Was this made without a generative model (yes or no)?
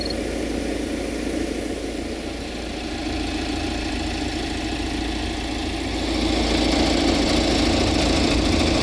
yes